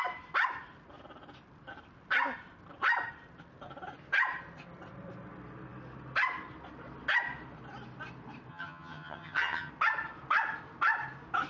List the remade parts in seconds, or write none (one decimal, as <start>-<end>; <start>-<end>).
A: 8.5-9.7